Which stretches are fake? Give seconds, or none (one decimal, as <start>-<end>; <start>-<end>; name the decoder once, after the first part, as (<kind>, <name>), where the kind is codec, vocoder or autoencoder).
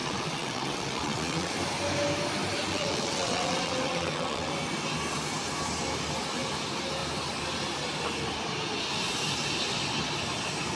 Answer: 0.0-1.5 (vocoder, WaveNeXt); 2.7-4.5